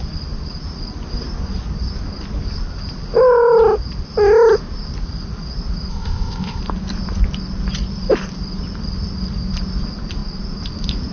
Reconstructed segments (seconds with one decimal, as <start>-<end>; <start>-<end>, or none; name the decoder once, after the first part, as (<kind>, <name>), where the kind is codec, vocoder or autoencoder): 5.9-6.6 (codec, ZipCodec)